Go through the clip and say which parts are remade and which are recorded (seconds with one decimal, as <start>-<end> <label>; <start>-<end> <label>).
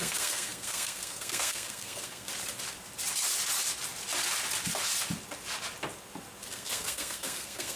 0.0-2.3 remade; 2.3-6.5 recorded; 6.5-7.8 remade